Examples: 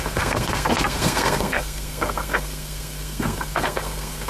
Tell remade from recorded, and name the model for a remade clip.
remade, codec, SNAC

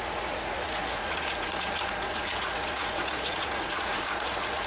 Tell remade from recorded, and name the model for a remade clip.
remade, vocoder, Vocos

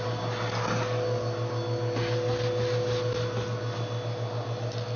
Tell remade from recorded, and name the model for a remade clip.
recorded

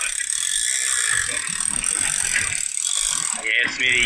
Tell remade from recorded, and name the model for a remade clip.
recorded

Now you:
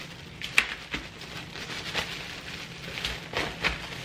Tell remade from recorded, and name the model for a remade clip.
recorded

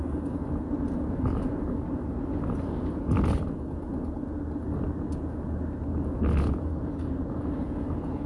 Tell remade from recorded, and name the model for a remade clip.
recorded